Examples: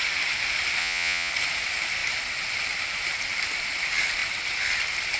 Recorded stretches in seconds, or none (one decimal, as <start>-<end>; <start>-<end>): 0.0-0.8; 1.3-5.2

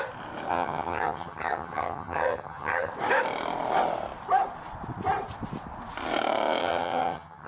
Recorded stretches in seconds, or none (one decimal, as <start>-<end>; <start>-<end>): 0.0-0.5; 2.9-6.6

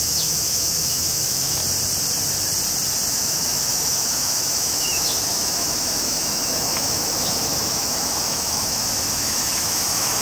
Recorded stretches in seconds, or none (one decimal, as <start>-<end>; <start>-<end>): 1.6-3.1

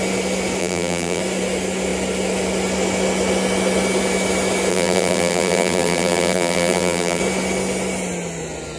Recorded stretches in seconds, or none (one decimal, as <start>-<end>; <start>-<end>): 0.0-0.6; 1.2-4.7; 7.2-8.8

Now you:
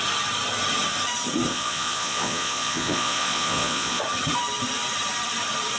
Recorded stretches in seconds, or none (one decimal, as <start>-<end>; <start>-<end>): 0.0-1.5; 4.0-5.8

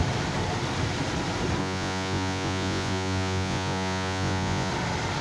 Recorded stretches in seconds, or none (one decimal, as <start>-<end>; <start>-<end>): 0.0-1.6; 4.7-5.2

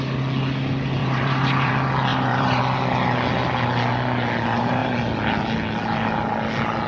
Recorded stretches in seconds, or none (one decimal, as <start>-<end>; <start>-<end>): 0.0-1.0; 1.7-2.1; 2.6-6.9